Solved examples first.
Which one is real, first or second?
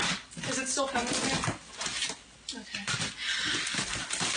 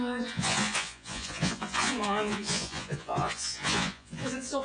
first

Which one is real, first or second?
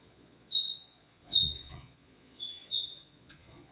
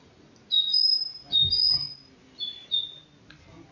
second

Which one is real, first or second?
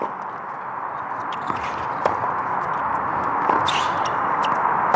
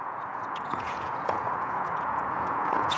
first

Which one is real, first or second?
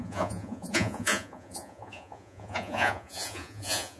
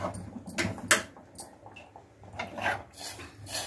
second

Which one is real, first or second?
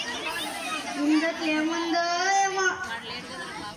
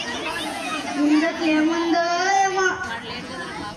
first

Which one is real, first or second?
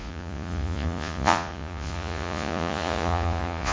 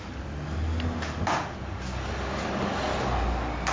second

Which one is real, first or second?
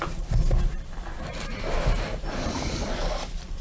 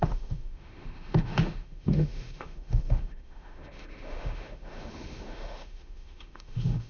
first